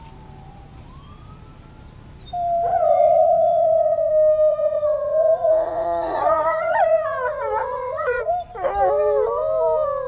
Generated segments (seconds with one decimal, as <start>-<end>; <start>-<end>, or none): 2.7-4.1; 4.5-8.3